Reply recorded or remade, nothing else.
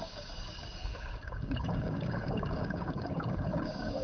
remade